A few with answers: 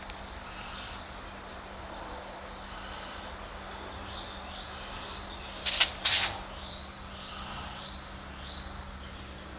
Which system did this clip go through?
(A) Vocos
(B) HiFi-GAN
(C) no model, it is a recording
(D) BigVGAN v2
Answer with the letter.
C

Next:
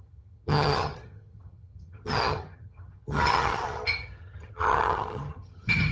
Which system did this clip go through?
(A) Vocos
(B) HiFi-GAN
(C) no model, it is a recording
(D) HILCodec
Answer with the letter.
B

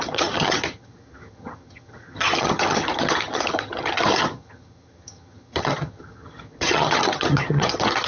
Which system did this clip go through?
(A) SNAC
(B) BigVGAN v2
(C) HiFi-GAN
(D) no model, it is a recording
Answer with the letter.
C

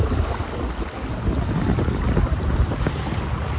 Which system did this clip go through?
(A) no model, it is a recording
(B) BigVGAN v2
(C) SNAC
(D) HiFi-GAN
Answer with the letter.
A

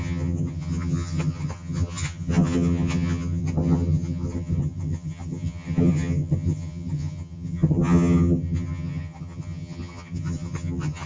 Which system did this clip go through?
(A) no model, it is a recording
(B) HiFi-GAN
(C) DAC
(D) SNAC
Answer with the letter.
B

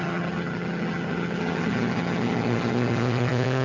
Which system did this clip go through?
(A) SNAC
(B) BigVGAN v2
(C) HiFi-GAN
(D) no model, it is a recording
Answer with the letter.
C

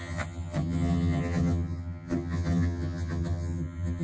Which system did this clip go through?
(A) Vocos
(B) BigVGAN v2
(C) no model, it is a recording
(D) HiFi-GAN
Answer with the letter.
D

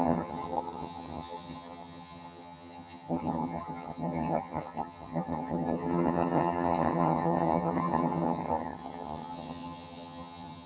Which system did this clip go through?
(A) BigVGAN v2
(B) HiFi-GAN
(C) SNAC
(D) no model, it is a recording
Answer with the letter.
B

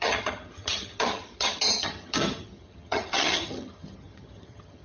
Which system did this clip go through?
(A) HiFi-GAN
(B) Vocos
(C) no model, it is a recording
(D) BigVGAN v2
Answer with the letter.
A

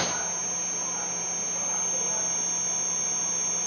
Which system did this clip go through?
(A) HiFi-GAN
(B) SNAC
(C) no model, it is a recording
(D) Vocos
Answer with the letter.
C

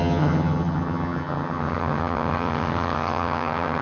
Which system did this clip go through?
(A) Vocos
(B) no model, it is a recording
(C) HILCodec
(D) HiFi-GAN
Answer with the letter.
D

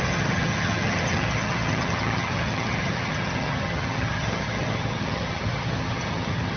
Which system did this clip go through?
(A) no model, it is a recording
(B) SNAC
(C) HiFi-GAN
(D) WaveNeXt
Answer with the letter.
C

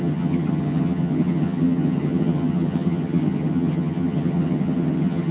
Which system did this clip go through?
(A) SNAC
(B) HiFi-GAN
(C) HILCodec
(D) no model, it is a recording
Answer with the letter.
B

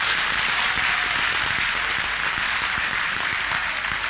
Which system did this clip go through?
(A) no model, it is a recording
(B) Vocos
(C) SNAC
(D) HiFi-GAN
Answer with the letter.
A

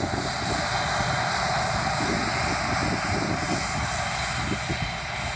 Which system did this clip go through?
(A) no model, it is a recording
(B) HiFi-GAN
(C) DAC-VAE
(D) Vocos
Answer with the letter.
A